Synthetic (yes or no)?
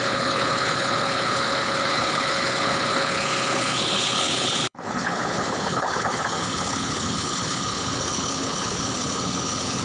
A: yes